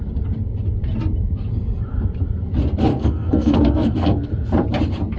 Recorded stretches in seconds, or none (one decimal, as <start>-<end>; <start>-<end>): 0.0-2.9; 4.3-5.2

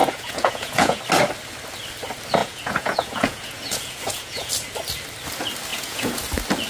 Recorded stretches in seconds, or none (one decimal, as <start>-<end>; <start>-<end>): 1.0-2.4; 4.5-5.7; 6.2-6.7

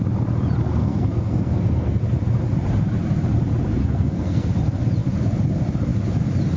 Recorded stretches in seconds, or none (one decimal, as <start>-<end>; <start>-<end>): 0.0-0.8; 2.0-3.8; 4.5-6.6